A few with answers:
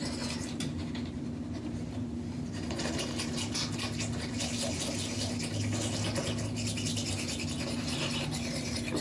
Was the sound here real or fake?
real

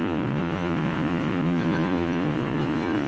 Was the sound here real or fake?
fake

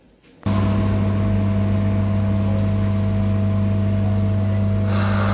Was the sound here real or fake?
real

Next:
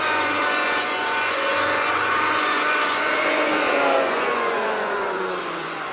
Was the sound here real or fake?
fake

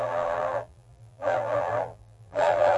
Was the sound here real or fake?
fake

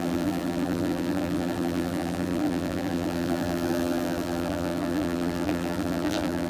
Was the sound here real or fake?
fake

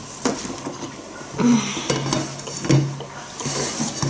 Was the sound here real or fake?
real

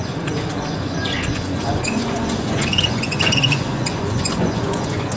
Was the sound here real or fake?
fake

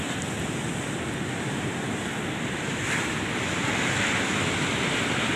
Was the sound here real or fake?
real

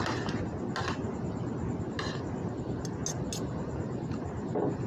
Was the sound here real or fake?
real